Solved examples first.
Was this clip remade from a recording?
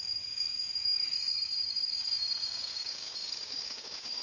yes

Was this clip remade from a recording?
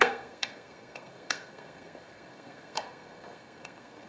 yes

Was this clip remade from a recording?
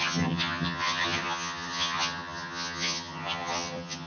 yes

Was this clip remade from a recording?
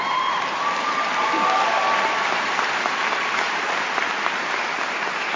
yes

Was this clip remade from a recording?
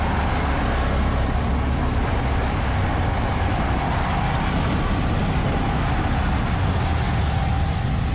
no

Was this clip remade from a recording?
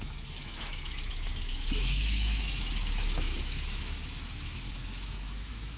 yes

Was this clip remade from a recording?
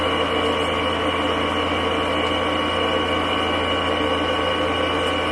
no